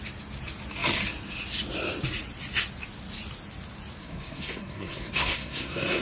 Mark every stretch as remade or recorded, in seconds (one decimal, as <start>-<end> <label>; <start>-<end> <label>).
0.0-4.0 recorded; 4.0-6.0 remade